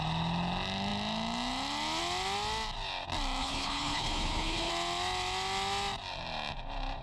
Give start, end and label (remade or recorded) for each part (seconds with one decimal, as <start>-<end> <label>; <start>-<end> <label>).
0.0-3.4 recorded; 3.4-4.7 remade; 4.7-7.0 recorded